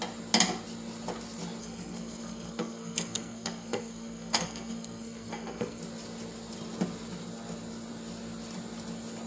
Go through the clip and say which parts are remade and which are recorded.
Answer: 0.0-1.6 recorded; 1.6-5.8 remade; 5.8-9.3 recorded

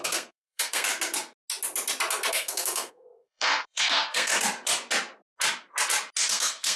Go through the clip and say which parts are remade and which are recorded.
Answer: 0.0-0.9 remade; 0.9-2.3 recorded; 2.3-4.3 remade; 4.3-6.3 recorded; 6.3-6.8 remade